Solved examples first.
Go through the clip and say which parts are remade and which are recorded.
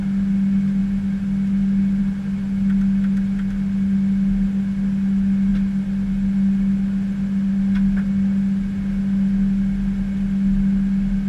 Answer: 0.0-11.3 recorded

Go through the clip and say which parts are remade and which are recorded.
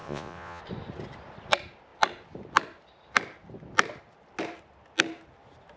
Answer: 0.0-0.6 remade; 0.6-5.8 recorded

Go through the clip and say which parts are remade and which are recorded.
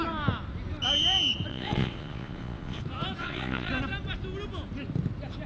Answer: 0.0-1.5 recorded; 1.5-2.8 remade; 2.8-3.2 recorded; 3.2-3.7 remade; 3.7-5.5 recorded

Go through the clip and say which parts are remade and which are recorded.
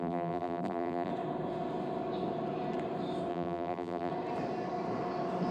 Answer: 0.0-1.1 remade; 1.1-3.3 recorded; 3.3-4.1 remade; 4.1-5.5 recorded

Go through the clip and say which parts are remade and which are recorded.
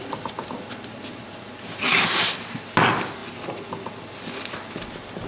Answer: 0.0-5.3 recorded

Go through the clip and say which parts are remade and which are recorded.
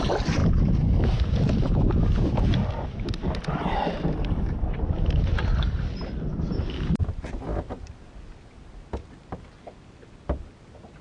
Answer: 0.0-11.0 recorded